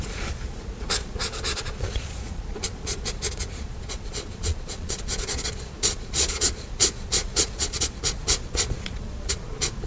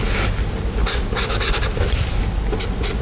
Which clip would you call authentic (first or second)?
second